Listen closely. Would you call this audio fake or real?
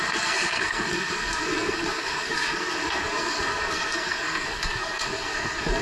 fake